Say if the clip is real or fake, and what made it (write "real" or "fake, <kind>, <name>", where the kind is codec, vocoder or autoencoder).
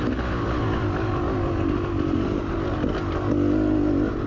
real